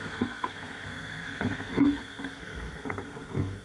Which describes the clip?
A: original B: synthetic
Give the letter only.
B